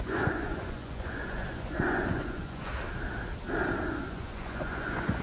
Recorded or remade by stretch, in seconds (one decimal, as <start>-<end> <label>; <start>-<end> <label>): 0.0-2.7 remade; 2.7-3.8 recorded; 3.8-5.2 remade